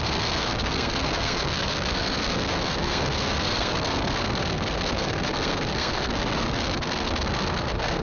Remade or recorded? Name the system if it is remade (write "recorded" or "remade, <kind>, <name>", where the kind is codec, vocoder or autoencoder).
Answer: remade, codec, SNAC